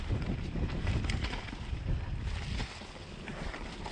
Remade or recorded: recorded